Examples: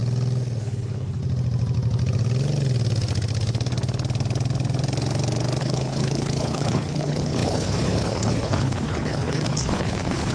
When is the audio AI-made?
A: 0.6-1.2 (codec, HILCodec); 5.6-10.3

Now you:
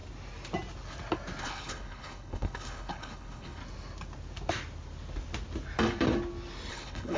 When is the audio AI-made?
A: 1.4-3.6 (codec, HILCodec); 6.7-7.2

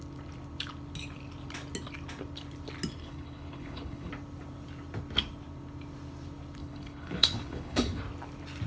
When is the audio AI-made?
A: 3.0-4.1 (codec, HILCodec); 6.6-8.0

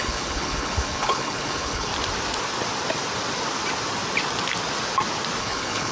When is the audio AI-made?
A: 0.0-1.9 (codec, HILCodec); 5.4-5.9

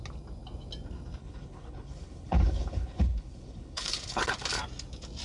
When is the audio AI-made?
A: 1.2-4.3 (codec, HILCodec)